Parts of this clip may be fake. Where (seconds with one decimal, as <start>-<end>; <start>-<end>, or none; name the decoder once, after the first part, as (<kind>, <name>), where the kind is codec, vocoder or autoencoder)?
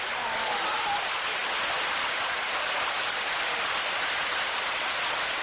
none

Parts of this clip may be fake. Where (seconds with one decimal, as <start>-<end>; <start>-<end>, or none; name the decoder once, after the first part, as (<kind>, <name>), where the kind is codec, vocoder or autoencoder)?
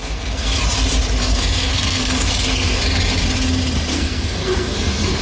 0.0-0.6 (codec, SNAC); 1.2-2.8; 3.9-5.2